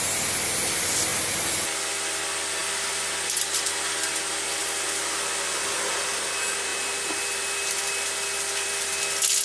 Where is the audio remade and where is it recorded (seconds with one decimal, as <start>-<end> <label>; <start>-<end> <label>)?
0.0-6.7 recorded; 6.7-8.9 remade; 8.9-9.4 recorded